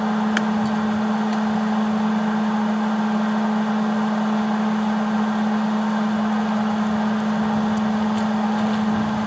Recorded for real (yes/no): yes